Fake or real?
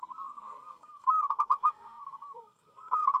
fake